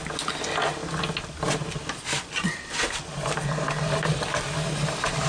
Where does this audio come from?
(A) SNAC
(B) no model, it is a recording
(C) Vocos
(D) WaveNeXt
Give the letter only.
B